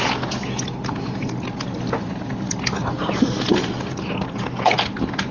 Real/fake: real